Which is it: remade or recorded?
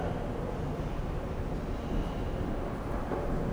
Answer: recorded